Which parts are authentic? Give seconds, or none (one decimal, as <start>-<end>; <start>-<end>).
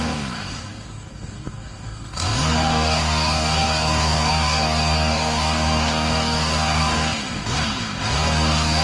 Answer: none